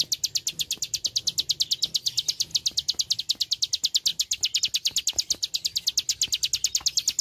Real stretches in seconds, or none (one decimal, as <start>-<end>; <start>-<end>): 0.0-4.1; 4.6-7.2